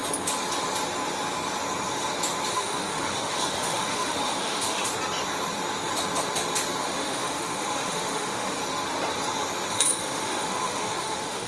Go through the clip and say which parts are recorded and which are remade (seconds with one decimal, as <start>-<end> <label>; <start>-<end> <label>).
0.0-2.5 recorded; 2.5-4.9 remade; 4.9-6.8 recorded; 6.8-8.6 remade; 8.6-9.7 recorded; 9.7-11.5 remade